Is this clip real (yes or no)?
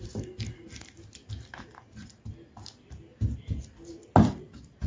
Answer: yes